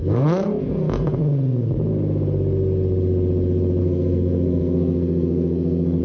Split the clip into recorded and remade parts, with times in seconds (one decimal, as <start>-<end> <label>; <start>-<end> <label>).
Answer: 0.0-0.6 remade; 0.6-3.8 recorded; 3.8-6.0 remade